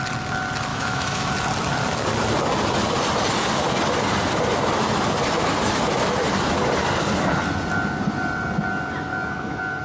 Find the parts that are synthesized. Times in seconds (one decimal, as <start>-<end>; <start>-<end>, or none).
0.7-1.3; 9.1-9.8